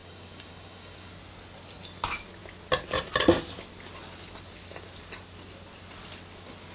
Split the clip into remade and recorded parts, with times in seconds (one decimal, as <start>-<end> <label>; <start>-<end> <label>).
0.0-1.1 remade; 1.1-6.7 recorded